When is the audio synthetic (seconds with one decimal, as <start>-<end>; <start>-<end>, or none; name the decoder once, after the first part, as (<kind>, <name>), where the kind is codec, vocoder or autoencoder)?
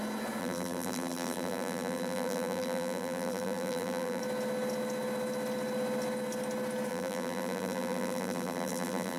0.4-4.2 (vocoder, BigVGAN v2); 6.9-9.2